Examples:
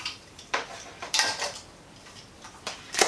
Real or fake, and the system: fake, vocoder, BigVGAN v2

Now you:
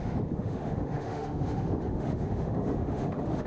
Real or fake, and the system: fake, autoencoder, DAC-VAE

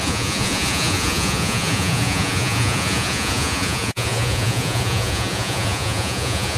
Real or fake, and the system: fake, vocoder, Vocos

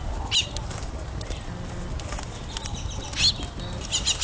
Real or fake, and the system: real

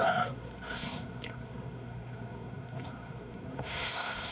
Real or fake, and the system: fake, codec, SNAC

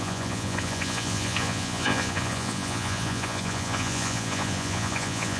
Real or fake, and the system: fake, vocoder, Vocos